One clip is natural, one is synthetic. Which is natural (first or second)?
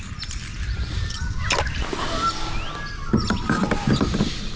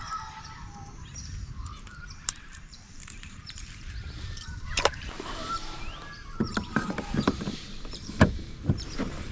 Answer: first